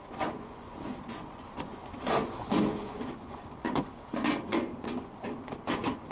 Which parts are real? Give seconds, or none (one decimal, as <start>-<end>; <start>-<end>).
none